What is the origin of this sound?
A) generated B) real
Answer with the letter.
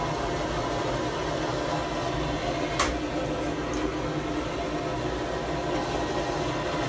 B